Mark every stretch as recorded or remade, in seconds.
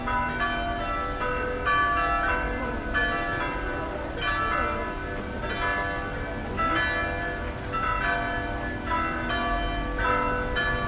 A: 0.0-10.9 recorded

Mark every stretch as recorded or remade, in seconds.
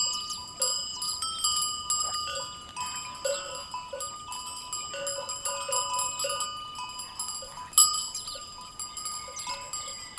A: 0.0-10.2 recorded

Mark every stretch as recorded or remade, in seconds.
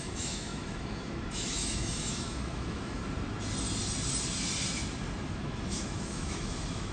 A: 0.0-3.0 remade; 3.0-5.3 recorded; 5.3-6.9 remade